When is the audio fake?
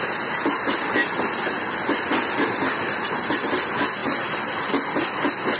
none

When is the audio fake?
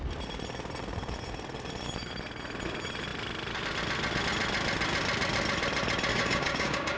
6.1-7.0 (codec, DAC)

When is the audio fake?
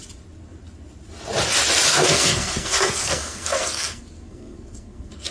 1.9-5.3 (codec, SNAC)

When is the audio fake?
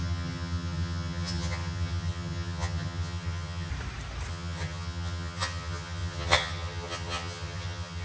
0.0-3.7 (vocoder, HiFi-GAN); 4.3-8.0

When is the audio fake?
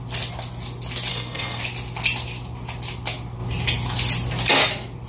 1.1-1.6 (codec, SNAC)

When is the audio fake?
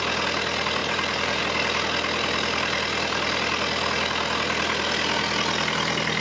0.8-1.4 (vocoder, BigVGAN v2)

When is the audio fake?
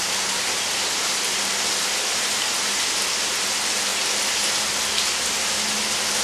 none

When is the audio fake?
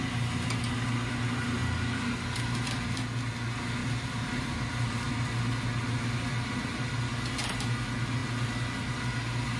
3.8-5.1 (vocoder, BigVGAN v2)